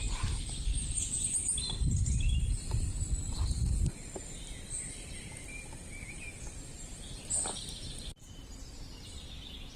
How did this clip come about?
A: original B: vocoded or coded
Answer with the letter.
B